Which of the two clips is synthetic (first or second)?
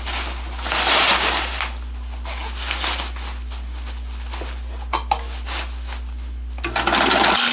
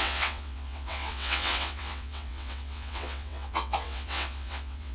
second